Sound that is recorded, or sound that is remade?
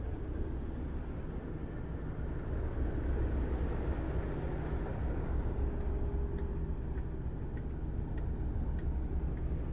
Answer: recorded